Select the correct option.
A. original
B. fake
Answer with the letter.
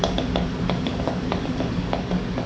B